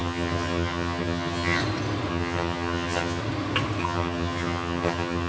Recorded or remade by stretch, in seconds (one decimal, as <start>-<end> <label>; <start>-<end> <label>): 0.0-1.6 remade; 1.6-2.1 recorded; 2.1-3.2 remade; 3.2-3.8 recorded; 3.8-5.3 remade